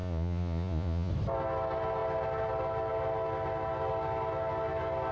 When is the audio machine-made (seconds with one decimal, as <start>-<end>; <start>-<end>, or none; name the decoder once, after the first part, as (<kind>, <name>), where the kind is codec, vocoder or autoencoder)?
0.0-1.1 (vocoder, Vocos)